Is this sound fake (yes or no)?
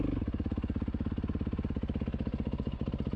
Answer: no